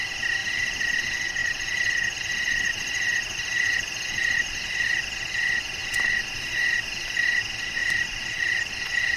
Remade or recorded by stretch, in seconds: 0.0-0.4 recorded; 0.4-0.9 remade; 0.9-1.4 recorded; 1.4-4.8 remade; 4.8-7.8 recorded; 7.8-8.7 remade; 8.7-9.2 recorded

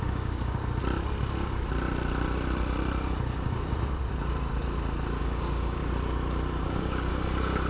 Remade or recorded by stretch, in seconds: 0.0-0.6 remade; 0.6-5.2 recorded; 5.2-5.8 remade; 5.8-6.6 recorded; 6.6-7.1 remade; 7.1-7.7 recorded